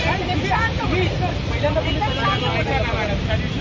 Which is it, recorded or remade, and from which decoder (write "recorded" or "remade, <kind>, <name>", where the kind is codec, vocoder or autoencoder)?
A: recorded